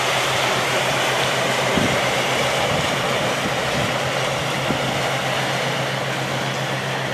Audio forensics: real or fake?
real